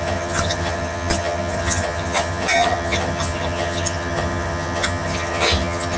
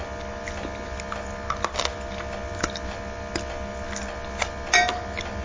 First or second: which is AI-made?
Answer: first